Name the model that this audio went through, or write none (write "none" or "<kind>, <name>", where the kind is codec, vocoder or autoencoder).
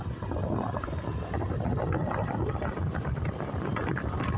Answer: none